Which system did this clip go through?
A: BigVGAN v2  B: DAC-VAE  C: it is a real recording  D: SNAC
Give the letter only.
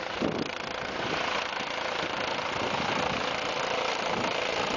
C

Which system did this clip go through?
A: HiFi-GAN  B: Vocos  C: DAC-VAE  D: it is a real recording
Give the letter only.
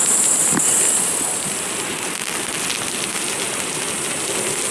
D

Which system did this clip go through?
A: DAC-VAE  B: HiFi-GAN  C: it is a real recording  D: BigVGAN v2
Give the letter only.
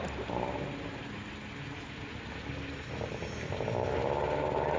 C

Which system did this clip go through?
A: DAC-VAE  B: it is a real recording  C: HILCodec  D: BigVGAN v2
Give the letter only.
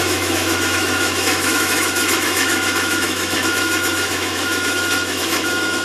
A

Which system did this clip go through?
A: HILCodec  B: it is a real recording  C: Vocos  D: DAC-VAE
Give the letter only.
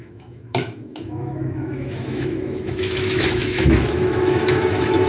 D